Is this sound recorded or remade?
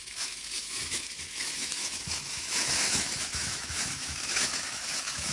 remade